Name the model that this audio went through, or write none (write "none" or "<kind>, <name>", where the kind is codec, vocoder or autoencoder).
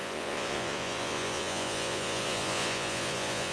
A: vocoder, Vocos